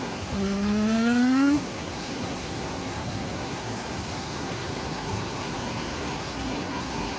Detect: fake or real fake